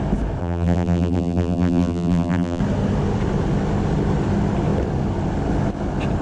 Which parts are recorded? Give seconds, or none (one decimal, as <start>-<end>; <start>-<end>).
0.0-0.4; 2.6-6.2